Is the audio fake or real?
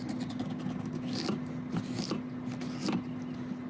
real